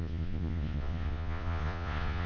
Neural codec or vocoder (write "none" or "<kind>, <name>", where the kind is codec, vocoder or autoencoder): vocoder, Vocos